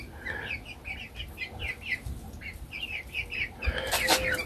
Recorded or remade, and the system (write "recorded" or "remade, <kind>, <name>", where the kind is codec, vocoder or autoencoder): recorded